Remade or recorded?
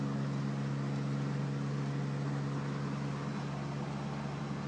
recorded